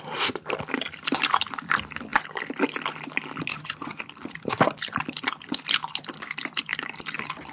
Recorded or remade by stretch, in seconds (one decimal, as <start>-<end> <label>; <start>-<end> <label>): 0.0-3.5 recorded; 3.5-4.0 remade; 4.0-7.5 recorded